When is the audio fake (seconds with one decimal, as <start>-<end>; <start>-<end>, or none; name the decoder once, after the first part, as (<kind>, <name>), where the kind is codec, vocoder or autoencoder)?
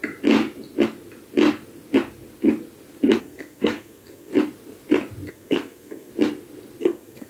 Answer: 3.2-4.3 (codec, SNAC); 5.3-6.1; 6.8-7.3